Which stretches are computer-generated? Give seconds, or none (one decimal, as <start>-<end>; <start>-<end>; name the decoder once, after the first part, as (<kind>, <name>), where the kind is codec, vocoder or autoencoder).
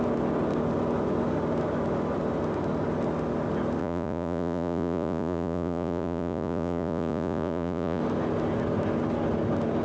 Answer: 3.8-8.0 (vocoder, Vocos)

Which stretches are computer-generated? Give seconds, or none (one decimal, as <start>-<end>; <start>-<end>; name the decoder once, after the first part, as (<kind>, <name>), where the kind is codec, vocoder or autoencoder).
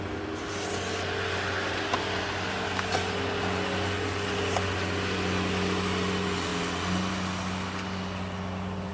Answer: none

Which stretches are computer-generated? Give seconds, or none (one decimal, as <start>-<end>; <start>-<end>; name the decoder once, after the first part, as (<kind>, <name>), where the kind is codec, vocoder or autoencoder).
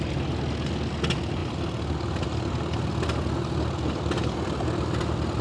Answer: none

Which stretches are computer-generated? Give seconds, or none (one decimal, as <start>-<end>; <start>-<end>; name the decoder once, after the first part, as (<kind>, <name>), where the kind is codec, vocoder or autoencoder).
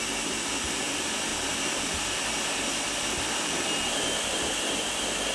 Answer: none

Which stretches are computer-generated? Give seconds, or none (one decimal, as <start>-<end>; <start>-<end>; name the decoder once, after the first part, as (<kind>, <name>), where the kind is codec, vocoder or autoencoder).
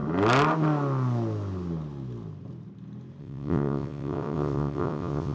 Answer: 3.2-5.3 (vocoder, WaveNeXt)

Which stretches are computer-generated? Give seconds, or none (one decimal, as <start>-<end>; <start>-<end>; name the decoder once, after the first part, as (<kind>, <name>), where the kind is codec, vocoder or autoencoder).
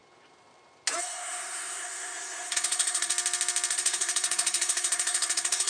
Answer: 1.0-3.1 (codec, SNAC); 3.7-5.7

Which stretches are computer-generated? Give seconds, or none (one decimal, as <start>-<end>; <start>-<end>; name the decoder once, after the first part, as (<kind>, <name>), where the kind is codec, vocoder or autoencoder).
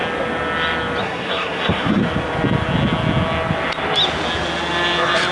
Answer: 1.0-2.0 (codec, SNAC)